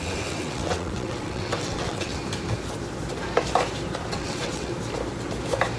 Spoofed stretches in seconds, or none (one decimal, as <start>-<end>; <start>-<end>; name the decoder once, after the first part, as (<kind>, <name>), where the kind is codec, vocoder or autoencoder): 0.0-2.2 (vocoder, WaveNeXt); 4.1-4.7